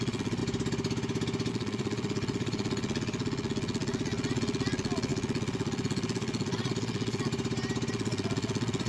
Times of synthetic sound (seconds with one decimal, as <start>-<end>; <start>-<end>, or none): 0.0-0.4; 1.5-7.3; 7.9-8.9